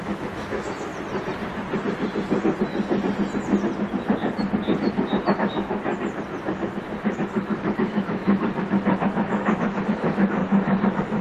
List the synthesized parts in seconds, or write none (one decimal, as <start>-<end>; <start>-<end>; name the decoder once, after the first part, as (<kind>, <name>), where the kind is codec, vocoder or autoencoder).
0.0-0.9 (autoencoder, DAC-VAE); 5.3-5.9; 6.8-11.2